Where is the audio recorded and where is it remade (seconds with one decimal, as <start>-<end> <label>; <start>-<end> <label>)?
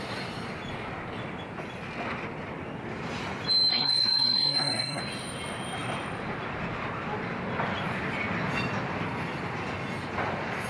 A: 0.0-3.7 recorded; 3.7-5.0 remade; 5.0-10.7 recorded